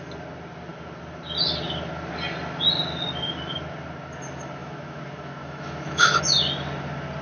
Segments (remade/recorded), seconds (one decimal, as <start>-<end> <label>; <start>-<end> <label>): 0.0-4.6 recorded; 4.6-6.2 remade; 6.2-7.2 recorded